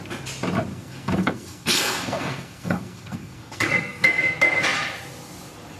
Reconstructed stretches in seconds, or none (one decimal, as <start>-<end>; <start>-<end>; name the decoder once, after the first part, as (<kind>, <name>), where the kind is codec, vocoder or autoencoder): 0.7-4.2 (codec, SNAC)